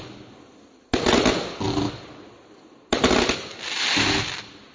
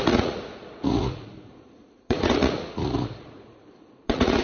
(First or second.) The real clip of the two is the first